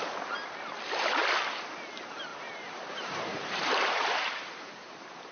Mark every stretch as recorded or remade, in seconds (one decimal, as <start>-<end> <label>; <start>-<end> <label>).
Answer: 0.0-2.3 recorded; 2.3-5.3 remade